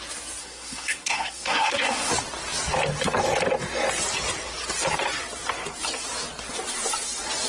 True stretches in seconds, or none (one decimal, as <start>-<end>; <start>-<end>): 0.0-0.4; 2.1-7.5